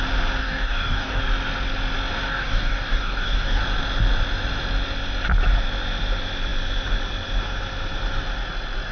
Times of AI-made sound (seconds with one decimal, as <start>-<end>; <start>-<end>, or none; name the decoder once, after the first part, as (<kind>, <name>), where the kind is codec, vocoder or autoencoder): 0.4-1.2 (codec, DAC); 2.3-3.6

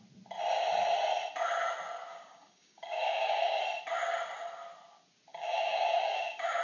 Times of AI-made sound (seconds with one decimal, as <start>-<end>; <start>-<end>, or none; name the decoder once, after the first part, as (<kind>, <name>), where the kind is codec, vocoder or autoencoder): 2.1-3.6 (codec, DAC); 5.3-6.6

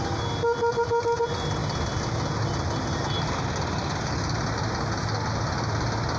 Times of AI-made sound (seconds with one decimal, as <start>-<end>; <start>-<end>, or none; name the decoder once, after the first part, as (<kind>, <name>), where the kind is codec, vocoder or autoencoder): none